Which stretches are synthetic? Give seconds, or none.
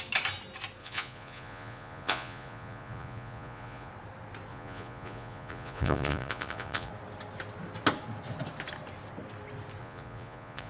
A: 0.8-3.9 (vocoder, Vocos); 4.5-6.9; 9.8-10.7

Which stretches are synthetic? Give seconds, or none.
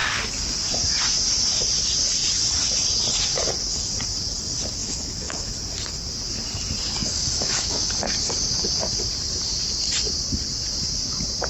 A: 4.8-5.5 (autoencoder, DAC-VAE); 7.0-7.9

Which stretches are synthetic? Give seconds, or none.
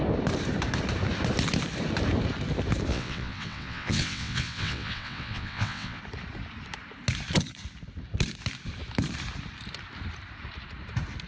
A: 2.9-6.0 (vocoder, WaveNeXt)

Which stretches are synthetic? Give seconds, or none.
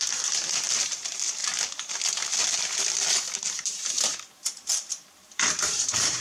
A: 0.0-1.4 (vocoder, BigVGAN v2); 3.1-6.2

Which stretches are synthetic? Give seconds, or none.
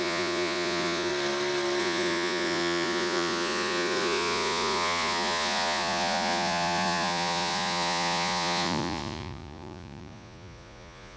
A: 0.0-1.1 (vocoder, Vocos); 1.8-11.2